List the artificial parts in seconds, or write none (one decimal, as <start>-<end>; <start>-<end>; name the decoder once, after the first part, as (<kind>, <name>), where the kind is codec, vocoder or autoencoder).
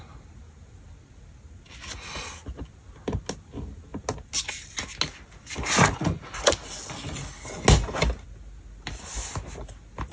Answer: none